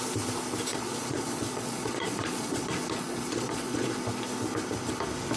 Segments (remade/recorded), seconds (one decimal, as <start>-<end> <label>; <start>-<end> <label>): 0.0-0.7 recorded; 0.7-3.9 remade; 3.9-5.4 recorded